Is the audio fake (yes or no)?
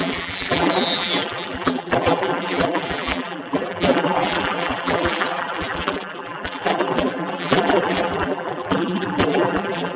yes